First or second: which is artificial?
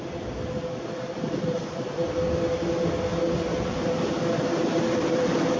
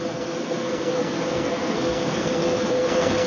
second